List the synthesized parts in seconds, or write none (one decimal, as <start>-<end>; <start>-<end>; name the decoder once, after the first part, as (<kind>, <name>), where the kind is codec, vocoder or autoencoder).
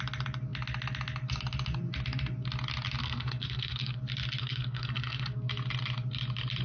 3.0-4.0 (codec, SNAC); 4.4-5.5